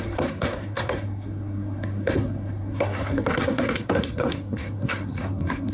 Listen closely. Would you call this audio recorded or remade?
remade